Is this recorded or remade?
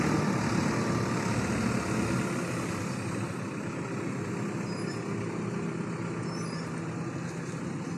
recorded